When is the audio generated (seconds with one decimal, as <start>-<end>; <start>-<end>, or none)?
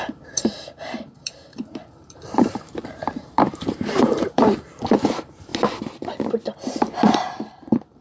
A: 0.0-5.5; 6.6-8.0